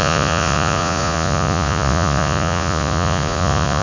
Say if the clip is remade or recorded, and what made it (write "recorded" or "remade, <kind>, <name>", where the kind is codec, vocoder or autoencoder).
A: remade, vocoder, Vocos